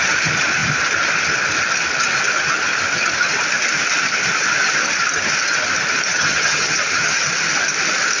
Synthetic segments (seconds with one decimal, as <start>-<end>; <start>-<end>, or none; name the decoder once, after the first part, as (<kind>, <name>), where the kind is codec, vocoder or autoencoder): 6.1-7.2 (vocoder, HiFi-GAN)